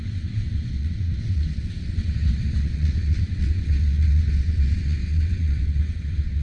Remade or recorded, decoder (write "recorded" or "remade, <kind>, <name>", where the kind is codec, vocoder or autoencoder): remade, vocoder, WaveNeXt